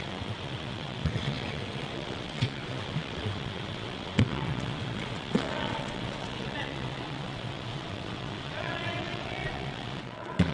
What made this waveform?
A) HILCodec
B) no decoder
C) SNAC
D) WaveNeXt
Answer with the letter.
D